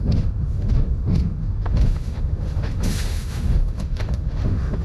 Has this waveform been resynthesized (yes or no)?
yes